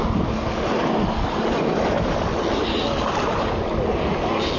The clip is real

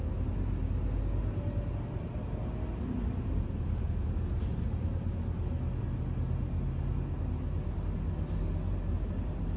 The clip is real